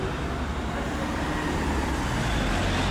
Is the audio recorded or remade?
recorded